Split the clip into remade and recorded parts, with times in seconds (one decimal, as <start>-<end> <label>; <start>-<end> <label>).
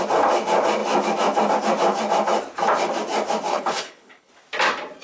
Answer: 0.0-3.5 recorded; 3.5-4.3 remade; 4.3-5.0 recorded